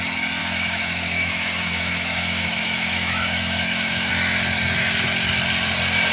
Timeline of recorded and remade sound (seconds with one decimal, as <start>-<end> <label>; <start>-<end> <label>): 0.0-0.4 recorded; 0.4-4.1 remade; 4.1-6.1 recorded